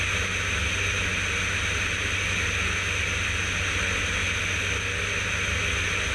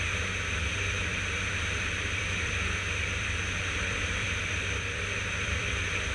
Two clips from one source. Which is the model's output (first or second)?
second